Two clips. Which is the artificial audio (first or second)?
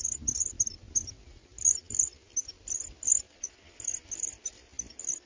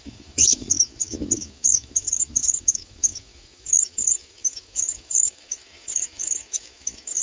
second